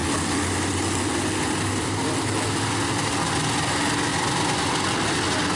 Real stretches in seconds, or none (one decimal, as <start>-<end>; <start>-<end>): 0.0-4.1; 4.9-5.6